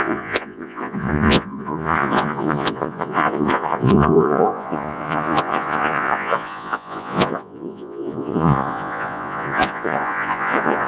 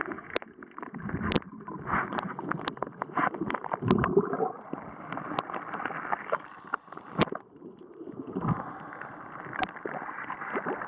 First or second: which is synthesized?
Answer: first